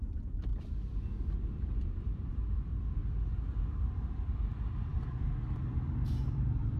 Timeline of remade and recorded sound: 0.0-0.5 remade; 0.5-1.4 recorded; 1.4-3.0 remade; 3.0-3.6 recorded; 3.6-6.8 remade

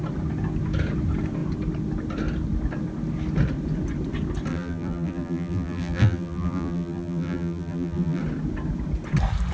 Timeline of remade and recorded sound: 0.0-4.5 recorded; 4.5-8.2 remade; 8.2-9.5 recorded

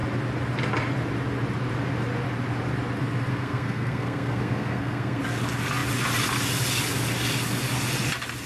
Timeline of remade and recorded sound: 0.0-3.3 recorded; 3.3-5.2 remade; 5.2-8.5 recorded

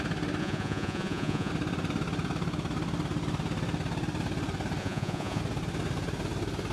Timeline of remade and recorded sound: 0.0-0.4 recorded; 0.4-1.5 remade; 1.5-4.8 recorded; 4.8-5.4 remade; 5.4-6.7 recorded

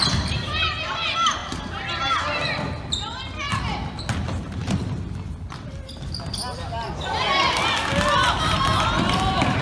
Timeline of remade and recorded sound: 0.0-9.6 recorded